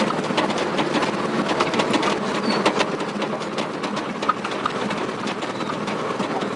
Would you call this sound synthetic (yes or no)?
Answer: no